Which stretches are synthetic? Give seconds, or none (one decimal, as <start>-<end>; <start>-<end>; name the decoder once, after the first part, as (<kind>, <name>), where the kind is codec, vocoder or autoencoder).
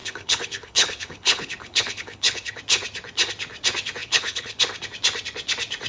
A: 0.0-2.6 (codec, HILCodec); 4.0-4.7